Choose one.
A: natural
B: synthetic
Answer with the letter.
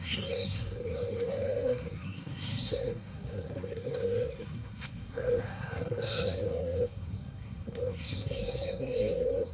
B